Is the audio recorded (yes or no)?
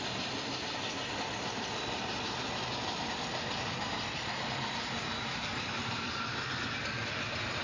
yes